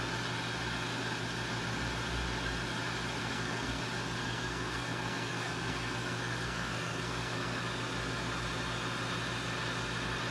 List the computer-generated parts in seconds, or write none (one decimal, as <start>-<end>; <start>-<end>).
3.2-3.8; 4.2-7.6